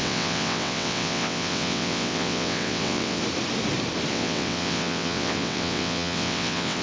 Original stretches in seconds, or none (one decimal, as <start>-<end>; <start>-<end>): 3.2-4.1